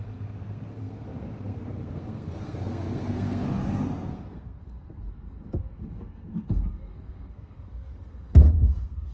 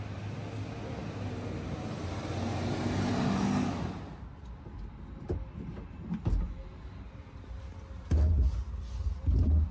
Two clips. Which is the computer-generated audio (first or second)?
first